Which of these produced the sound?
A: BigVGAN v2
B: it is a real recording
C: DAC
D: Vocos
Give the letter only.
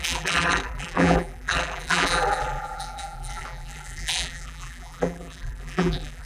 A